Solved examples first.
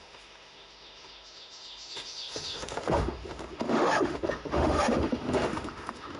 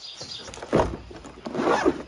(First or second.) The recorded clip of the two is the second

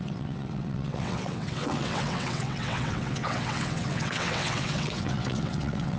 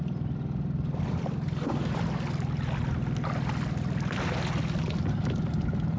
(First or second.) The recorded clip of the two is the second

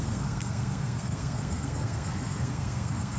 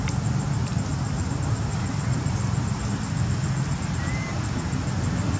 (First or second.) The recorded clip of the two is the second